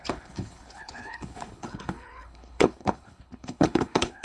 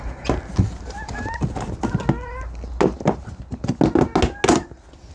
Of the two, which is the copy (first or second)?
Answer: first